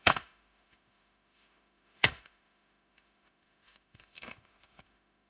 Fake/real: fake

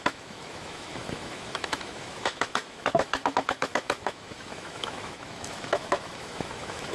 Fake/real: fake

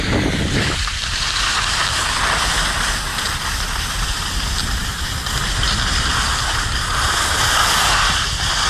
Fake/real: real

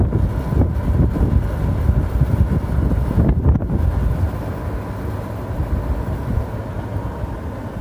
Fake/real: real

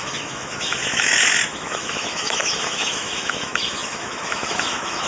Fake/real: fake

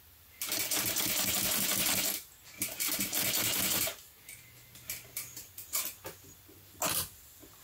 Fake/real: real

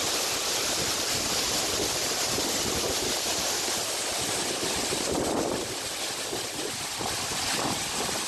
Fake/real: real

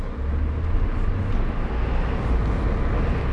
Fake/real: real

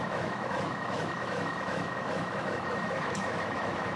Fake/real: fake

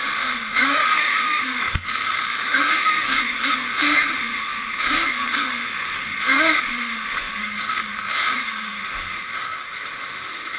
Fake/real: fake